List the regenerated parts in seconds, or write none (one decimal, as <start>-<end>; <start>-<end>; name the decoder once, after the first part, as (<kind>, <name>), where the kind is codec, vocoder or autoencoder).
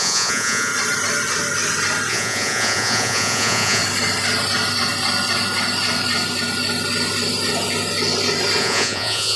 0.0-0.7 (vocoder, Vocos); 2.1-3.8; 8.6-9.4